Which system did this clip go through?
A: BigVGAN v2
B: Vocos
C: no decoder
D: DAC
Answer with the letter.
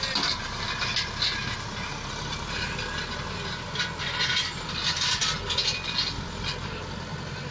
C